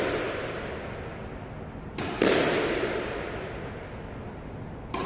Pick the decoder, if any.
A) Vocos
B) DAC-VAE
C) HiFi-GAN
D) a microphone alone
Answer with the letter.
D